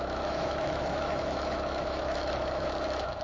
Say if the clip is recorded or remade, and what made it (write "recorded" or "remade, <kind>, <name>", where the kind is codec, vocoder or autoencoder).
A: remade, autoencoder, DAC-VAE